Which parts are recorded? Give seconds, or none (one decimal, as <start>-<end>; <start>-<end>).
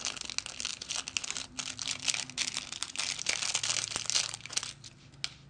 0.0-5.5